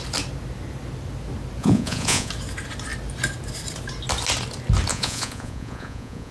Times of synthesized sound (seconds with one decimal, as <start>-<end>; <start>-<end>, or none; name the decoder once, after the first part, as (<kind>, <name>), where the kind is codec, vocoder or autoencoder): 1.6-2.3 (vocoder, Vocos); 4.9-6.3